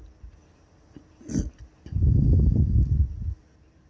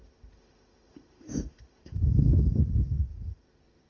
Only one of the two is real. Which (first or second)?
first